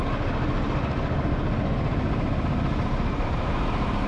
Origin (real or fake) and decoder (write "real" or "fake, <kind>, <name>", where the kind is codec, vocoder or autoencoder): real